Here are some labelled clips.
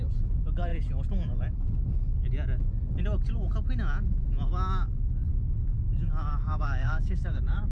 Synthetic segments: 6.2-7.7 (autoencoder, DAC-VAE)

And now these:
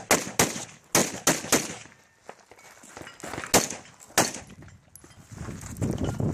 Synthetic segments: none

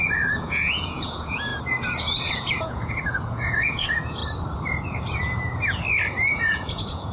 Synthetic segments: 0.0-1.5 (vocoder, Vocos); 2.4-4.2; 6.3-7.1

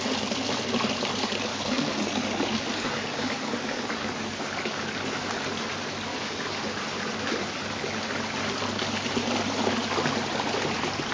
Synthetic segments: 1.5-4.9 (codec, DAC); 6.1-6.6